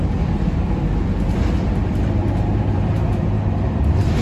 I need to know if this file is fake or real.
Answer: fake